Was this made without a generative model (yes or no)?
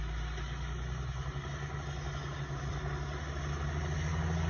yes